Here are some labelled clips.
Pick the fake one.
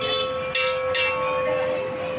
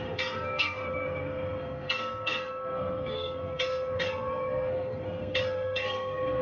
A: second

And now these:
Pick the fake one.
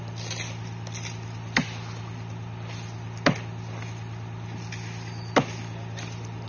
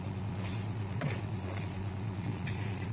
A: second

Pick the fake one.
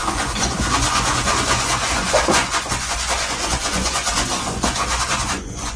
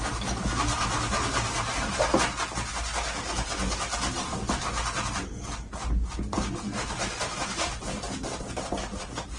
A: first